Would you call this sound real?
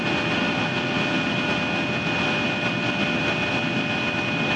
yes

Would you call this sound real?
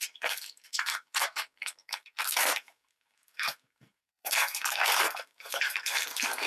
no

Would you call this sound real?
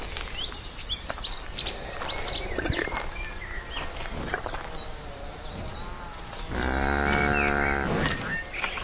yes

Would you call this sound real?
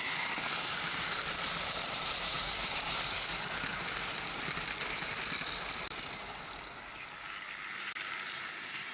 yes